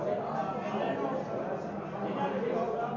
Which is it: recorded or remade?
recorded